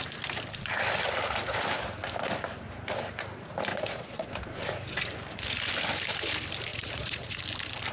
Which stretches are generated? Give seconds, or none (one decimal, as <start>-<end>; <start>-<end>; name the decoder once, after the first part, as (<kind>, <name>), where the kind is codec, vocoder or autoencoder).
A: 3.7-4.3 (vocoder, Vocos); 6.7-7.4